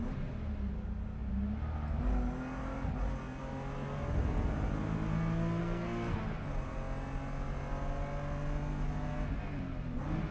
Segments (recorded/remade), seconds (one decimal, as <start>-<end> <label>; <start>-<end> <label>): 0.0-5.6 recorded; 5.6-6.2 remade; 6.2-10.3 recorded